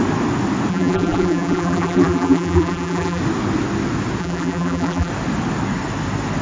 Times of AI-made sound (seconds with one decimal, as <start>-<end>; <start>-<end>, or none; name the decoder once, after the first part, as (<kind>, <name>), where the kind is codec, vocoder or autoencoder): 0.7-3.2 (vocoder, BigVGAN v2); 4.2-5.1

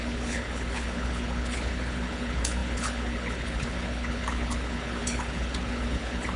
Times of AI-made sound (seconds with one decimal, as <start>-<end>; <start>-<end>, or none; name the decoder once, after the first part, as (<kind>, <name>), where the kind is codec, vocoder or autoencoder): 0.0-6.4 (codec, HILCodec)

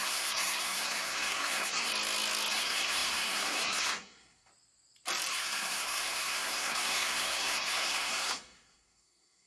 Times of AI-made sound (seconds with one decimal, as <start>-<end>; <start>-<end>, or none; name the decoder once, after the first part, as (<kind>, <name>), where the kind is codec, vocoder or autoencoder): 0.0-1.9 (codec, SNAC); 2.5-4.5; 5.3-9.5

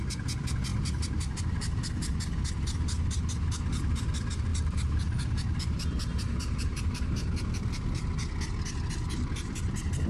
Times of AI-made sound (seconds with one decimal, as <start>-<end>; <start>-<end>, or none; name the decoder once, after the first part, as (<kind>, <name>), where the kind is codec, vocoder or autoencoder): 4.5-5.0 (vocoder, BigVGAN v2); 6.1-7.3

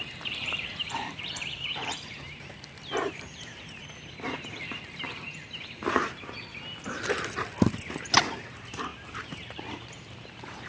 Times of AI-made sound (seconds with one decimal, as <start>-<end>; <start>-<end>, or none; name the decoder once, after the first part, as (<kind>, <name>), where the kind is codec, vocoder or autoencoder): 0.0-3.8 (vocoder, BigVGAN v2); 8.5-10.7

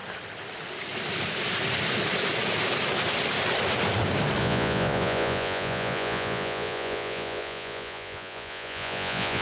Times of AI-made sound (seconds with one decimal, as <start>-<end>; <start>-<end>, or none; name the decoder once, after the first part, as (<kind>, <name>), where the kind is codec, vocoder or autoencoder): 4.4-9.4 (vocoder, Vocos)

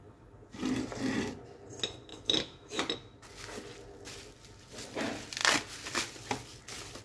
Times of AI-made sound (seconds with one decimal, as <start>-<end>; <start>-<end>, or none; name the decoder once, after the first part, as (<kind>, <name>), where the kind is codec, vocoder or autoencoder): 2.1-2.8 (autoencoder, DAC-VAE)

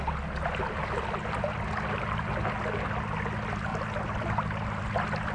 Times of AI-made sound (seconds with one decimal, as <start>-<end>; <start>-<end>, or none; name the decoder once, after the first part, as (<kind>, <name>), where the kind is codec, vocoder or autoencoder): 3.7-4.8 (vocoder, BigVGAN v2)